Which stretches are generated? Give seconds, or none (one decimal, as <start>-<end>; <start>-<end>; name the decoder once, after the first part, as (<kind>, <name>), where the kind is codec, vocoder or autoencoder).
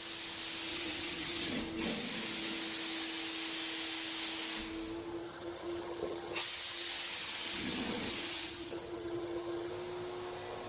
0.7-1.6 (vocoder, HiFi-GAN); 5.2-9.7